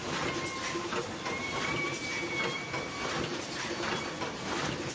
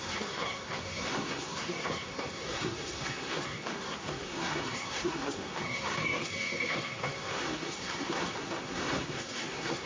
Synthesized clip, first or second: second